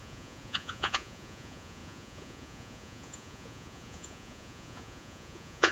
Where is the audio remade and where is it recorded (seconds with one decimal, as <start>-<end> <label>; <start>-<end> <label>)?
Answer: 0.0-5.7 remade

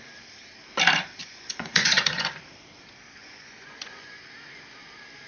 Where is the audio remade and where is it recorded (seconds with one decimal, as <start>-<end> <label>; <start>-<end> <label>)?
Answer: 0.0-1.2 recorded; 1.2-2.3 remade; 2.3-3.2 recorded; 3.2-4.2 remade; 4.2-5.3 recorded

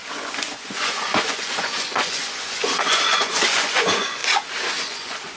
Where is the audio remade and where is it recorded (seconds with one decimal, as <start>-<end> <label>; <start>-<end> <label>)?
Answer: 0.0-4.2 remade; 4.2-4.8 recorded; 4.8-5.4 remade

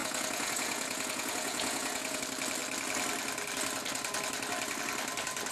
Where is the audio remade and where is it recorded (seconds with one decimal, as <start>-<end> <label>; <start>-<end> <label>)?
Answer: 0.0-2.2 remade; 2.2-5.5 recorded